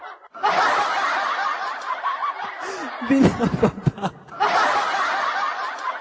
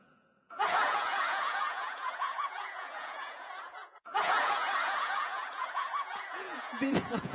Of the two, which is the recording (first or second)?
first